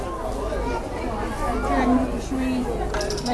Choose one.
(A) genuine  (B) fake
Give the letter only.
A